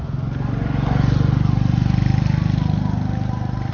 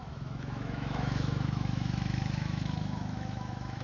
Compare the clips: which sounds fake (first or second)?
second